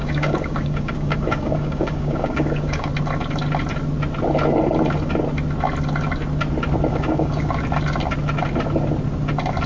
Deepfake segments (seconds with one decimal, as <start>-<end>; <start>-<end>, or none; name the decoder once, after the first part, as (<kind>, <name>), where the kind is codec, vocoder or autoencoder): 0.0-2.9 (codec, DAC); 6.9-7.5